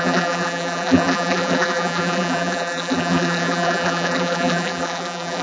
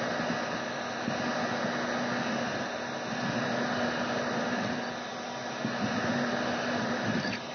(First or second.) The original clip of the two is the second